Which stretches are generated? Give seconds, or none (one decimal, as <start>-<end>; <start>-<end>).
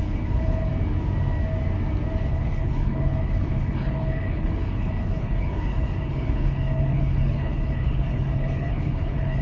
0.0-0.7; 2.3-9.4